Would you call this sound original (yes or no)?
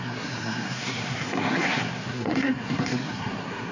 no